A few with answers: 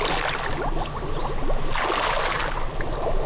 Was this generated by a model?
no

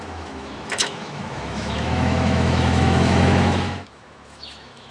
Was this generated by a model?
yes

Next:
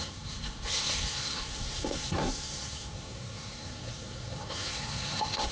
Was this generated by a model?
yes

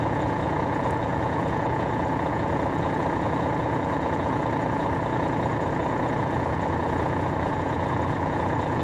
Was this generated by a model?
yes